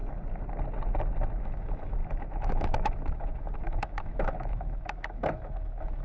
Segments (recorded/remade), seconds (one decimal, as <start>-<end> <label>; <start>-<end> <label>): 0.0-1.4 recorded; 1.4-6.0 remade

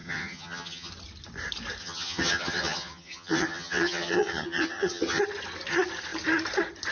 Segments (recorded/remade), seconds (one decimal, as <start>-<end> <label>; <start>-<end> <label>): 0.0-0.9 remade; 0.9-1.8 recorded; 1.8-5.2 remade; 5.2-6.9 recorded

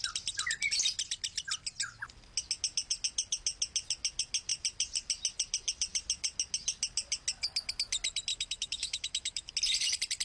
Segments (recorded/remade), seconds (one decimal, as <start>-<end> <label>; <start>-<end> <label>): 0.0-8.3 recorded; 8.3-9.5 remade; 9.5-10.2 recorded

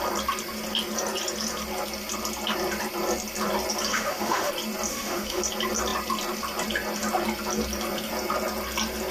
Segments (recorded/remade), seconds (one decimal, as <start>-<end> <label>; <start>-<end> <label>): 0.0-3.9 recorded; 3.9-4.5 remade; 4.5-4.9 recorded; 4.9-5.4 remade; 5.4-9.1 recorded